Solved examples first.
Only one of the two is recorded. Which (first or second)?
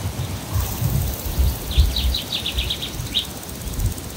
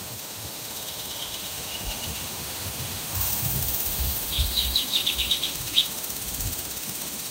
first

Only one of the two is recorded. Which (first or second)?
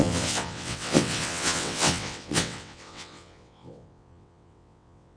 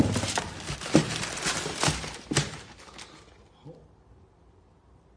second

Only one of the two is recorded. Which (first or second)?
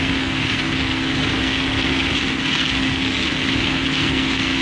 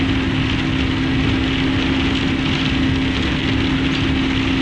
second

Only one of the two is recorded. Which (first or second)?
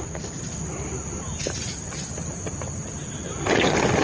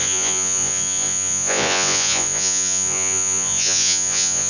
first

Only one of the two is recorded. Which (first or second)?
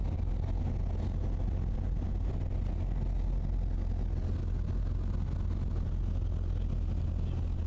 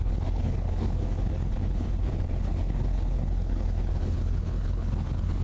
first